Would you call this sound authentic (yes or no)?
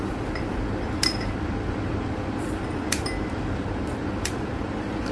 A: no